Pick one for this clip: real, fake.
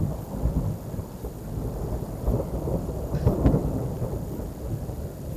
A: real